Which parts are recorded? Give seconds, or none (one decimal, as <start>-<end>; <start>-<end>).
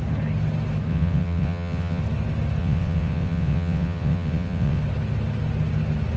0.0-0.9; 2.0-2.6; 4.8-6.2